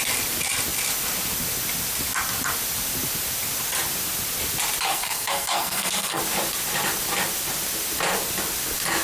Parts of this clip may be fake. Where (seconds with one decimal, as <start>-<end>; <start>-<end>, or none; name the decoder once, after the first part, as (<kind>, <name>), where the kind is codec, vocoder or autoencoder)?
4.9-6.2 (codec, SNAC)